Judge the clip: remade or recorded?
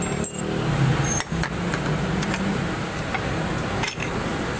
recorded